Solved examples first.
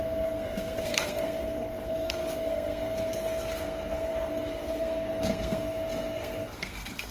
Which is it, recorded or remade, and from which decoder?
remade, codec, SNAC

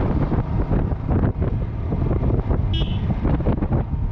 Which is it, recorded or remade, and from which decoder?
recorded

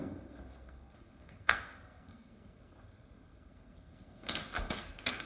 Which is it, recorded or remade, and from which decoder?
remade, codec, SNAC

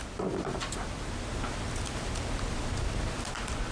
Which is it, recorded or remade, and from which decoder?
recorded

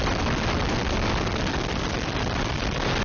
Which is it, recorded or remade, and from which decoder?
recorded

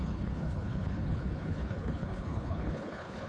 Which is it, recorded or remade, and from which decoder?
remade, codec, HILCodec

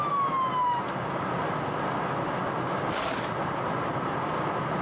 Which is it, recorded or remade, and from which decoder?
recorded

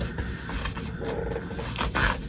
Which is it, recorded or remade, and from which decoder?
recorded